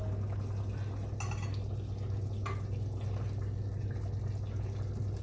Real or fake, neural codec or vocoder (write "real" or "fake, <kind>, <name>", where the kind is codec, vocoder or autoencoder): real